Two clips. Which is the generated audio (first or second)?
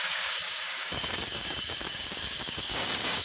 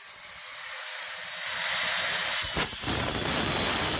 first